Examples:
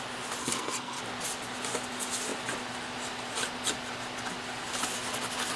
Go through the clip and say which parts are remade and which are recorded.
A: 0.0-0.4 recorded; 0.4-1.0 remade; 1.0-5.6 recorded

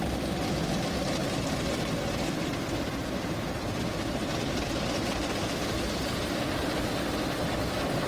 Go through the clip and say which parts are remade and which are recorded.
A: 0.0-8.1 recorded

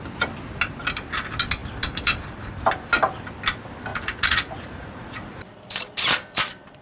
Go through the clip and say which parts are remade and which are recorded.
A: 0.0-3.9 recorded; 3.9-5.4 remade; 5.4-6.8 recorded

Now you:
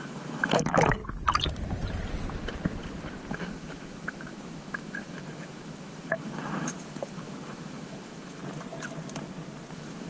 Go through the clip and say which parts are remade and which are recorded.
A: 0.0-1.0 remade; 1.0-3.3 recorded; 3.3-8.4 remade; 8.4-9.7 recorded; 9.7-10.1 remade

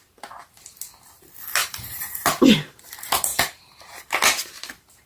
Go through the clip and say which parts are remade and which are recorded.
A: 0.0-1.6 recorded; 1.6-2.8 remade; 2.8-3.3 recorded; 3.3-4.1 remade; 4.1-5.1 recorded

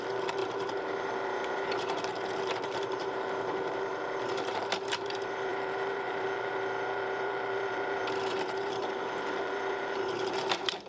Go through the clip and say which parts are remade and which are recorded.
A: 0.0-10.9 remade